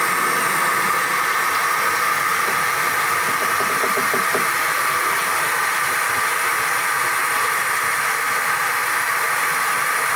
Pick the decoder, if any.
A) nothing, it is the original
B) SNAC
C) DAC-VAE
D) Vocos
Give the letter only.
A